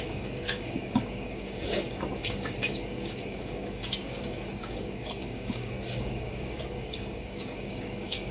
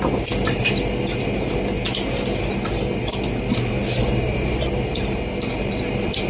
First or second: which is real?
second